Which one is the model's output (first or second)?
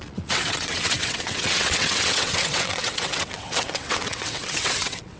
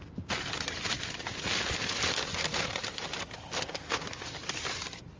first